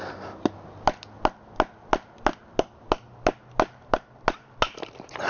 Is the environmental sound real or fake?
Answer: real